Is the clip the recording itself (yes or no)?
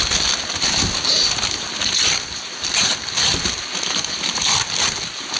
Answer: yes